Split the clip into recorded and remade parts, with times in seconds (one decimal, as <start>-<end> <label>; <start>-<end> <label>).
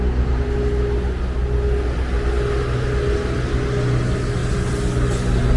0.0-5.6 recorded